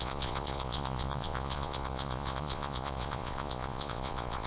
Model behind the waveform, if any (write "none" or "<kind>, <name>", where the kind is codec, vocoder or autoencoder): vocoder, Vocos